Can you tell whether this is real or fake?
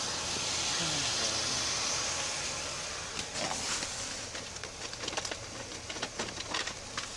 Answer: real